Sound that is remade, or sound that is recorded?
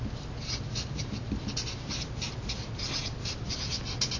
recorded